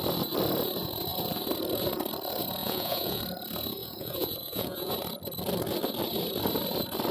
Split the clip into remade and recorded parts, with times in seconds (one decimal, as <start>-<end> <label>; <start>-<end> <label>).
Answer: 0.0-2.6 recorded; 2.6-3.2 remade; 3.2-3.8 recorded; 3.8-4.9 remade; 4.9-7.1 recorded